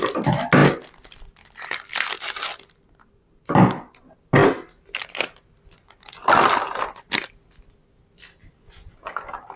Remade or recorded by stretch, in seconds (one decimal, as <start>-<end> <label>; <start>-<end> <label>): 0.0-9.6 recorded